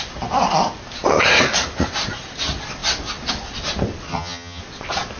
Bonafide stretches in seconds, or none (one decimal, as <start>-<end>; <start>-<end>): 0.0-4.1; 4.6-5.2